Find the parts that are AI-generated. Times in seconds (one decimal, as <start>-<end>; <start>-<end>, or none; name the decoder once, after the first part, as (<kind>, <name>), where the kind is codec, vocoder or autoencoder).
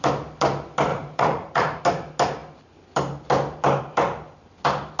0.9-1.8 (vocoder, Vocos)